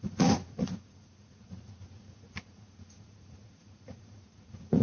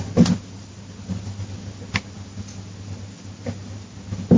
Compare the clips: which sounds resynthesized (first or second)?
first